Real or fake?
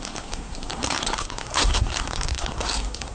fake